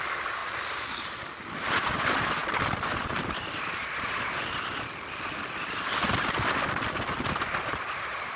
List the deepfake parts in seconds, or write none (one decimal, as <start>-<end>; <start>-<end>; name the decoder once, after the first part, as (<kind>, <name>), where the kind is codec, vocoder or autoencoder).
none